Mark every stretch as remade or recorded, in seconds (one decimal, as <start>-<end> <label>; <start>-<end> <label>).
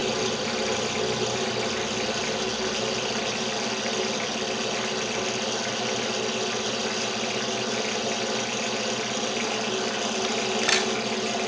0.0-11.5 recorded